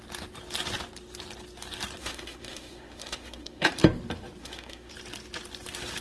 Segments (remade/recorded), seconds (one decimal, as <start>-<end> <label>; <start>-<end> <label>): 0.0-2.0 recorded; 2.0-3.7 remade; 3.7-4.4 recorded; 4.4-4.9 remade; 4.9-6.0 recorded